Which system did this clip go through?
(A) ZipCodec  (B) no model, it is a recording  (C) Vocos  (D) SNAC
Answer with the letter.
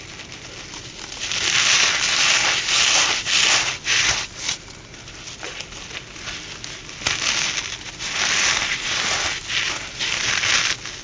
B